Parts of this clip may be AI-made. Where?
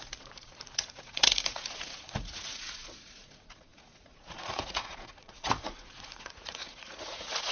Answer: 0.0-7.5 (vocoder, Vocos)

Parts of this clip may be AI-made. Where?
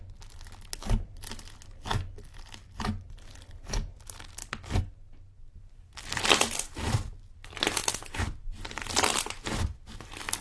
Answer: none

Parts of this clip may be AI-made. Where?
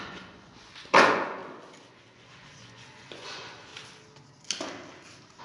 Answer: 0.0-1.4 (vocoder, Vocos); 1.9-3.7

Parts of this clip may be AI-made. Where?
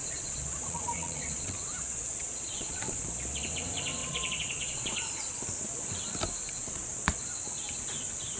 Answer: 0.0-3.0 (vocoder, Vocos); 4.0-5.4; 6.6-7.2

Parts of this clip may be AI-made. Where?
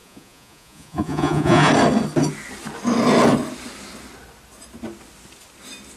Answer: 0.0-1.7 (vocoder, Vocos)